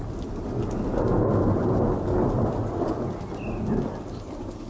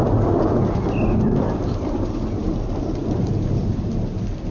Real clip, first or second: first